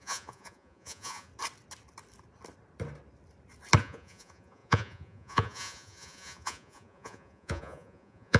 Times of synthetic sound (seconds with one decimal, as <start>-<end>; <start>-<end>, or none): 0.0-1.3; 3.8-8.4